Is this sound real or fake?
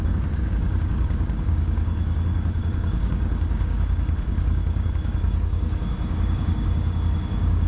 fake